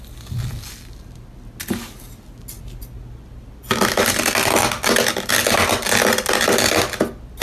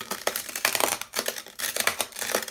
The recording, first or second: first